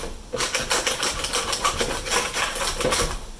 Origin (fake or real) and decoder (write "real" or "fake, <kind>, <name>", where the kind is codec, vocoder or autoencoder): real